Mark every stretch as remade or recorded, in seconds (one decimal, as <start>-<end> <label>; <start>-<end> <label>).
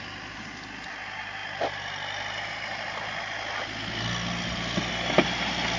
0.0-5.8 recorded